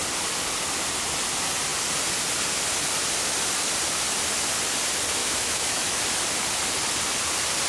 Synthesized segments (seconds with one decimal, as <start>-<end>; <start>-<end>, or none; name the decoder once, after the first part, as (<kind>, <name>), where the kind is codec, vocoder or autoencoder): 5.2-6.0 (autoencoder, DAC-VAE)